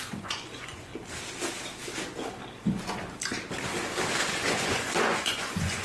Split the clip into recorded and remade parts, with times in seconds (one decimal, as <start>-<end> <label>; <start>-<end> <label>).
0.0-0.9 remade; 0.9-4.3 recorded; 4.3-5.8 remade